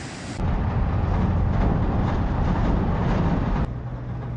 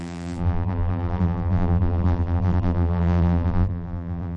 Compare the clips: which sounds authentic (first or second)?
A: first